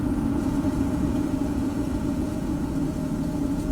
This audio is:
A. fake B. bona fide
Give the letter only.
A